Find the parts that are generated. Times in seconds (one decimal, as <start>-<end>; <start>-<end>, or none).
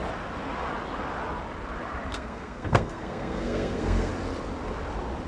2.1-4.1